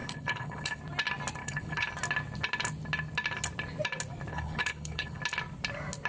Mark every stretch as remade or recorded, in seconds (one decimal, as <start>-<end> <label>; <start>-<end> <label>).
0.0-0.8 remade; 0.8-1.4 recorded; 1.4-1.9 remade; 1.9-4.3 recorded; 4.3-5.2 remade; 5.2-6.1 recorded